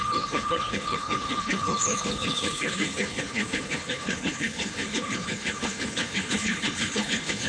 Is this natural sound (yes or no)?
no